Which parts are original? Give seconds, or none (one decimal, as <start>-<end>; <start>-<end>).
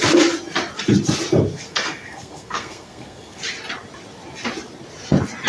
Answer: 0.0-1.5; 3.4-5.5